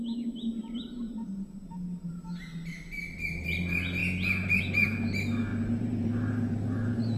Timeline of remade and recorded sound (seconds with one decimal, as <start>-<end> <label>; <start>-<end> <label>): 0.0-0.6 recorded; 0.6-2.1 remade; 2.1-5.5 recorded; 5.5-7.2 remade